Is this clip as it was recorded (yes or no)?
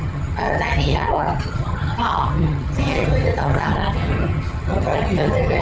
no